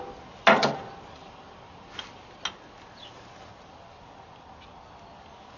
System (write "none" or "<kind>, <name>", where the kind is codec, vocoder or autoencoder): none